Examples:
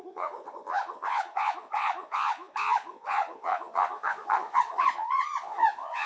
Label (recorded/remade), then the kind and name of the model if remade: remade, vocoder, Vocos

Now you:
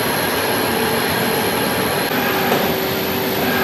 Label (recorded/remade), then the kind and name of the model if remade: recorded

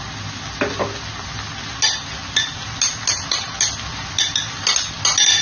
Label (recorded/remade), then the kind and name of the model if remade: recorded